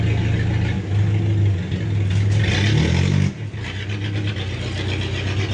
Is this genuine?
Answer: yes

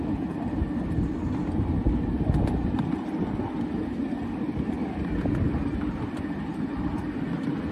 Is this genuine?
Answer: yes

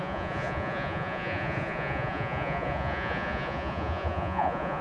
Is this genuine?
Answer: no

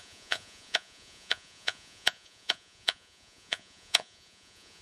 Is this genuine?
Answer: no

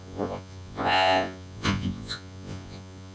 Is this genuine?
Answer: no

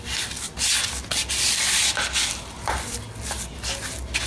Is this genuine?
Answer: yes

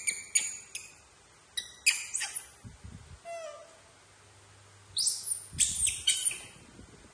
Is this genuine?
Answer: yes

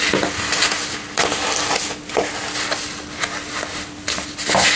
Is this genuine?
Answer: yes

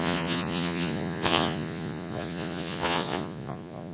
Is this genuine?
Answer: no